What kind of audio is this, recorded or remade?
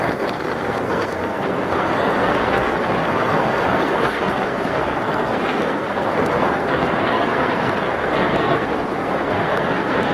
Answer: remade